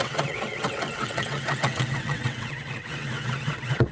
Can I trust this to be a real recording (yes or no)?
no